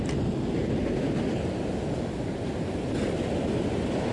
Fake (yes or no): no